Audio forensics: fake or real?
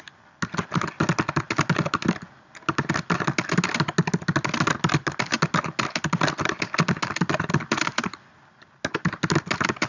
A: real